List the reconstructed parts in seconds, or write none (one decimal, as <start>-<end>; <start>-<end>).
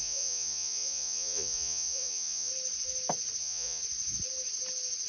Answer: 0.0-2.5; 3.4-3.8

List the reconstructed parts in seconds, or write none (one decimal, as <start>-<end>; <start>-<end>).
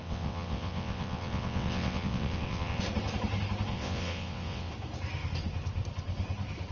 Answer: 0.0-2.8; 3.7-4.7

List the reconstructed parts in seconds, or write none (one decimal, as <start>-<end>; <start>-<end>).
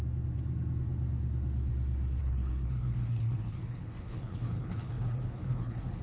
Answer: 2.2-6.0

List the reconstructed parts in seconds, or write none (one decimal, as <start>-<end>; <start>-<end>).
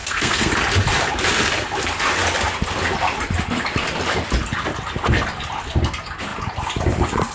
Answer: 0.0-0.5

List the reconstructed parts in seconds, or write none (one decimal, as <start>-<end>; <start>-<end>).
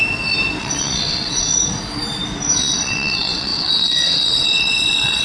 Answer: 0.6-1.5; 2.6-5.2